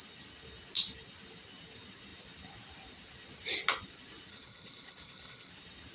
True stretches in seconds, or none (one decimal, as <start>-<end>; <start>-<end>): 0.0-4.3; 5.5-5.9